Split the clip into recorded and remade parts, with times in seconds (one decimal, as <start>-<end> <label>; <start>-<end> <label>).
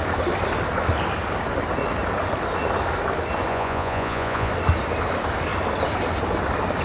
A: 0.0-3.5 recorded; 3.5-4.5 remade; 4.5-6.8 recorded